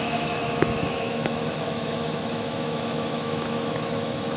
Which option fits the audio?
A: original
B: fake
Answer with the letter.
B